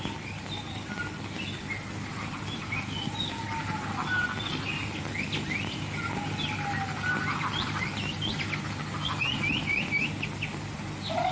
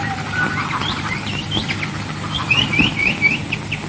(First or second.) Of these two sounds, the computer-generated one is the second